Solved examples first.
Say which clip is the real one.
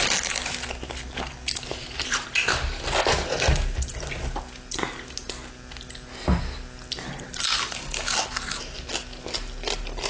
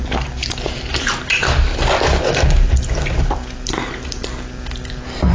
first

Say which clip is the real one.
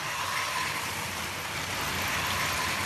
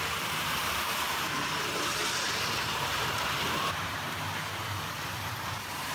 first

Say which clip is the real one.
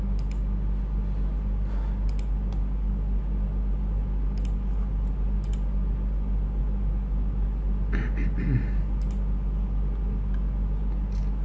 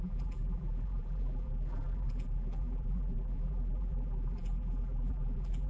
first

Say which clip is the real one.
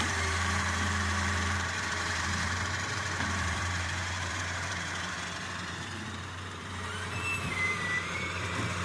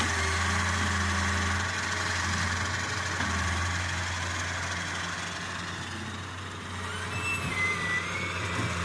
second